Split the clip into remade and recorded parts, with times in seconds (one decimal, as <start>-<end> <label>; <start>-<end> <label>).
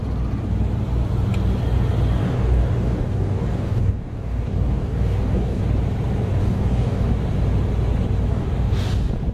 0.0-2.2 recorded; 2.2-5.6 remade; 5.6-6.4 recorded; 6.4-7.1 remade; 7.1-8.3 recorded; 8.3-8.9 remade; 8.9-9.3 recorded